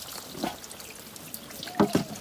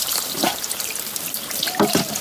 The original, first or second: first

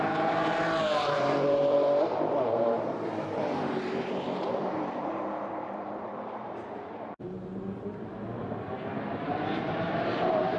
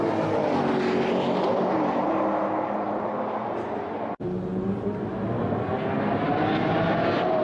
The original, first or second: second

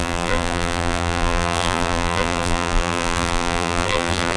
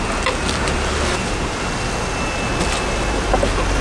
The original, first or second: second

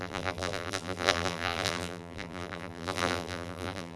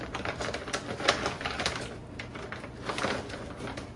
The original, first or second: second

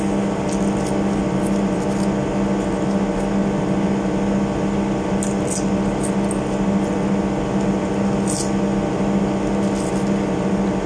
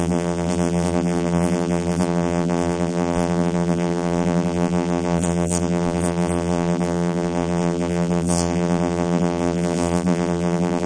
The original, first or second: first